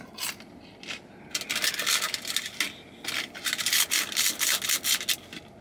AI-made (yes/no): no